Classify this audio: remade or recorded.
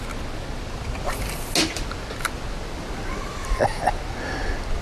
recorded